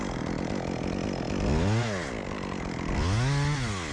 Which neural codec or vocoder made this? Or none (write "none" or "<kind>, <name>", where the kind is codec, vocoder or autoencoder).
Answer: none